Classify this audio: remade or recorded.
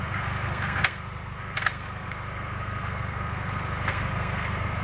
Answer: remade